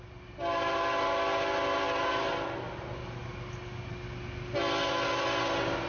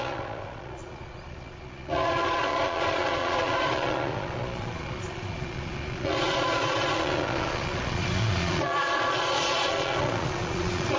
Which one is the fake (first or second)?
second